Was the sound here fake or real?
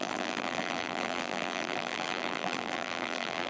fake